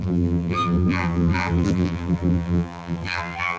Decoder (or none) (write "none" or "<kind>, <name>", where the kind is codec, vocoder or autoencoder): vocoder, BigVGAN v2